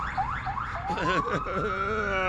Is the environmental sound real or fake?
real